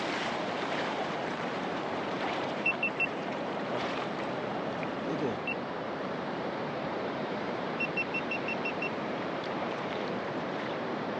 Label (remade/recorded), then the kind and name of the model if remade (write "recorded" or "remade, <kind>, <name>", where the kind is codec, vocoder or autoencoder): remade, vocoder, BigVGAN v2